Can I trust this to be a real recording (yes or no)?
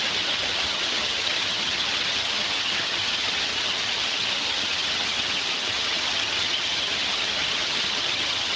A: no